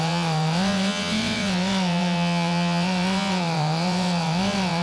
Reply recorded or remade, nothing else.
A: remade